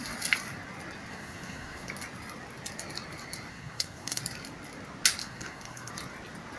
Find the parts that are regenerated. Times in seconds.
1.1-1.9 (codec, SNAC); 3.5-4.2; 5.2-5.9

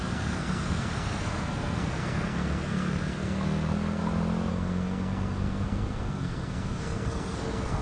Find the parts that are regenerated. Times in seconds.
0.0-4.0 (codec, SNAC); 4.5-7.8

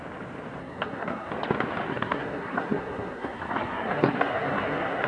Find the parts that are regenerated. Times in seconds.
0.6-1.3 (codec, SNAC); 1.9-5.1

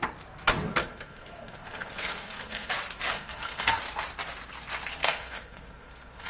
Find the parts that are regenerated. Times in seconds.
0.7-2.7 (codec, SNAC); 3.1-3.8; 5.0-6.3